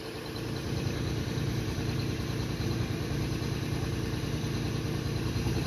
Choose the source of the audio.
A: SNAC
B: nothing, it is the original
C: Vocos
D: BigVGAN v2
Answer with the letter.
D